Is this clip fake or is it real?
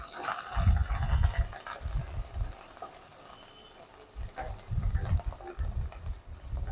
real